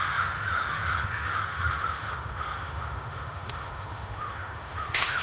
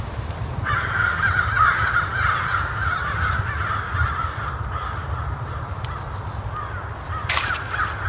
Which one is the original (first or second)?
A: second